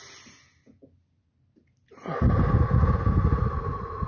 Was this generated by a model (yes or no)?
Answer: no